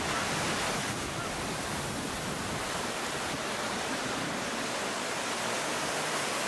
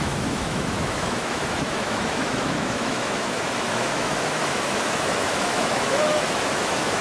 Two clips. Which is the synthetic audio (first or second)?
second